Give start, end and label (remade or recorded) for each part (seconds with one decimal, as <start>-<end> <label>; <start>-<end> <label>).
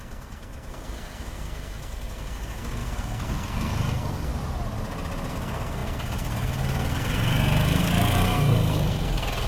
0.0-4.3 remade; 4.3-5.3 recorded; 5.3-9.5 remade